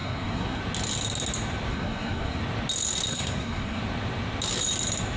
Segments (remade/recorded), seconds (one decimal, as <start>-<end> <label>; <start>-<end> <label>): 0.0-0.6 remade; 0.6-1.7 recorded; 1.7-2.4 remade; 2.4-3.1 recorded; 3.1-3.8 remade; 3.8-5.2 recorded